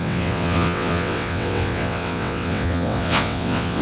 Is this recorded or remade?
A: remade